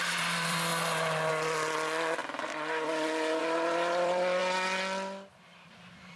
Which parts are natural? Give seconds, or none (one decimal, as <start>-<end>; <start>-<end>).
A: 0.7-1.3; 2.2-3.4; 4.4-5.3